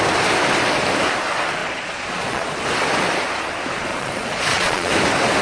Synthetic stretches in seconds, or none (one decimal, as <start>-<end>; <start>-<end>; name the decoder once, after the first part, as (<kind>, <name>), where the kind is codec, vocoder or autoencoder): 1.6-2.5 (vocoder, Vocos); 3.9-4.9